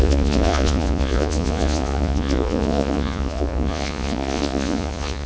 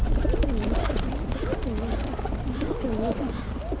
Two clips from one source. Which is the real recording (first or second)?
second